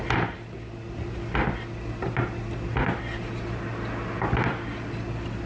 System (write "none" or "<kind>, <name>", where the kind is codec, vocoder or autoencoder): none